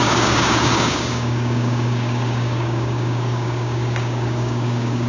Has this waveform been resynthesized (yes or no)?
yes